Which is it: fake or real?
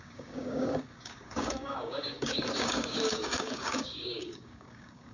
fake